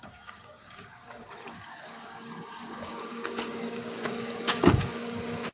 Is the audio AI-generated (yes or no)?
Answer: yes